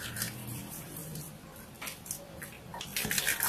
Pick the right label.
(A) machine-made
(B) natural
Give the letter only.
B